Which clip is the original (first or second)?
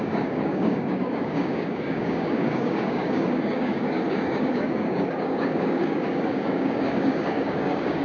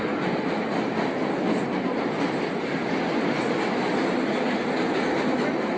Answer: second